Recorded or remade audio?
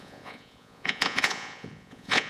remade